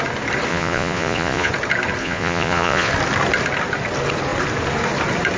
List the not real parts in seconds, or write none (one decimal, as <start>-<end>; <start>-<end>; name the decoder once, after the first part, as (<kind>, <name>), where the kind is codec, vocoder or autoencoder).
0.5-1.5 (vocoder, Vocos); 2.0-2.9